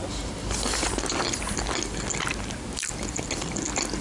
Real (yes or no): yes